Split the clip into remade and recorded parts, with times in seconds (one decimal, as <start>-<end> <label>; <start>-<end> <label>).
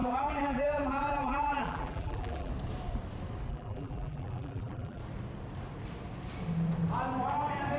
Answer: 0.0-2.5 remade; 2.5-3.5 recorded; 3.5-5.0 remade; 5.0-7.8 recorded